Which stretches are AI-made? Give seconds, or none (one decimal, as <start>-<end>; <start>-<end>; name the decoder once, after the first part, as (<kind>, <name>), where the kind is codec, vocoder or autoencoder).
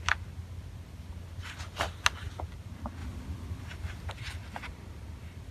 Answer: none